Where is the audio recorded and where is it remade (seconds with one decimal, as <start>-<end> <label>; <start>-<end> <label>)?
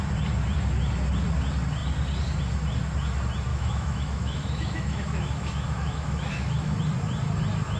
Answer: 0.0-3.5 recorded; 3.5-6.8 remade; 6.8-7.8 recorded